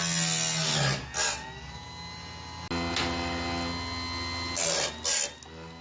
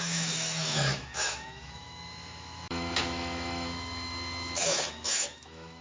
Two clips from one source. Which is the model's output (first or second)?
second